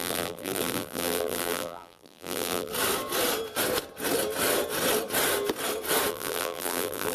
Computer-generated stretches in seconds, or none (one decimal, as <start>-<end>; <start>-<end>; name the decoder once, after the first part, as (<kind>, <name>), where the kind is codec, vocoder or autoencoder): 0.0-2.7 (vocoder, BigVGAN v2); 6.1-7.1